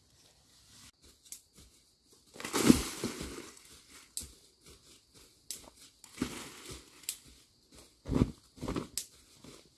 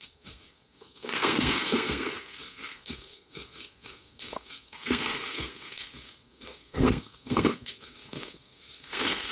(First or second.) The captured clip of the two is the first